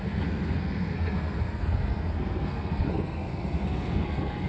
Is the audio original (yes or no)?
no